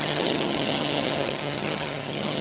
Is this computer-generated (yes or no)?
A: yes